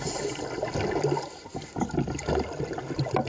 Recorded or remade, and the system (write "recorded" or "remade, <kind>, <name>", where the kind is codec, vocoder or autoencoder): recorded